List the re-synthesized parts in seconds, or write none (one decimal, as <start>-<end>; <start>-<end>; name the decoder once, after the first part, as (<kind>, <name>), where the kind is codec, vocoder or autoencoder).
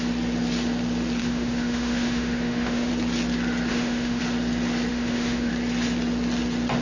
1.2-2.9 (autoencoder, DAC-VAE); 3.7-4.2; 4.9-5.5